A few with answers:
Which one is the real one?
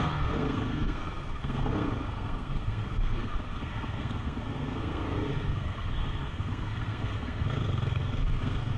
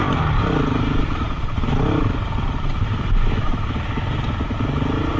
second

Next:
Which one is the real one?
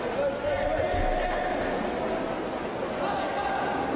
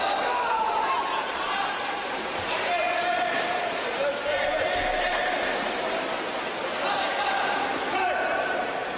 first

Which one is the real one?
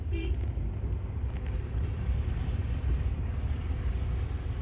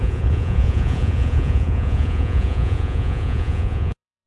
first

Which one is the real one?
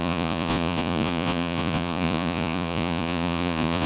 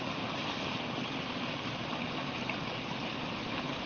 second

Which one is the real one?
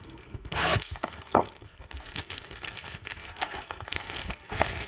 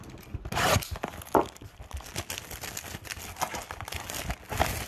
second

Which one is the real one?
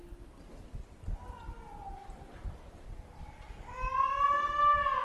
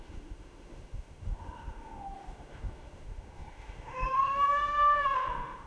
first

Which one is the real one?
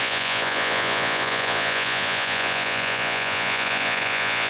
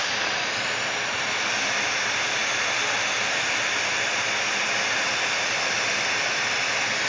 second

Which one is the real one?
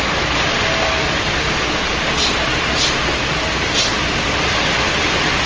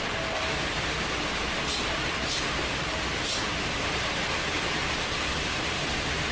first